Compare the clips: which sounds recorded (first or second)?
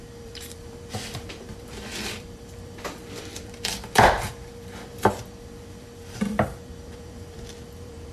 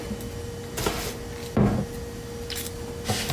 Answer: second